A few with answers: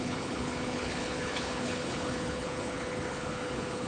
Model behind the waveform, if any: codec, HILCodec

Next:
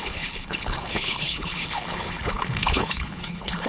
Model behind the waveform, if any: codec, HILCodec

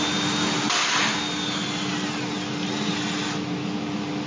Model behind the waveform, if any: none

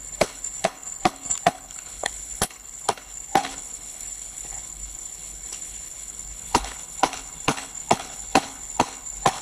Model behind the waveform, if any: codec, HILCodec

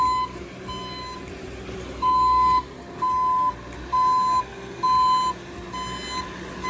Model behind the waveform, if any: none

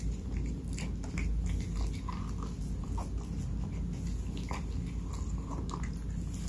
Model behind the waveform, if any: none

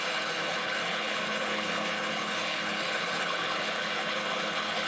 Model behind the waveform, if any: codec, HILCodec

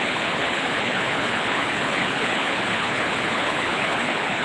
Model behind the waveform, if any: codec, HILCodec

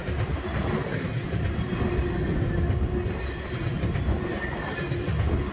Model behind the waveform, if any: none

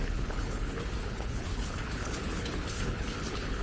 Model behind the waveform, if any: codec, HILCodec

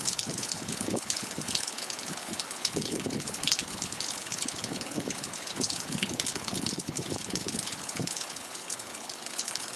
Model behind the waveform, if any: codec, HILCodec